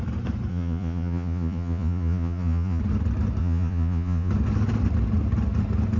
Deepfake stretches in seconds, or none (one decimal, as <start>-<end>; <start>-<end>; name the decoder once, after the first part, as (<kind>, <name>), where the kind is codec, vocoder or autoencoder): 0.5-2.8 (vocoder, Vocos); 3.4-4.3